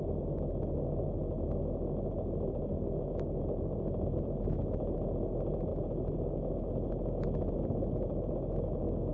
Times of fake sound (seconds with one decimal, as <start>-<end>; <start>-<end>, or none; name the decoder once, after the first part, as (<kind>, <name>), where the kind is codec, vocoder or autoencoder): none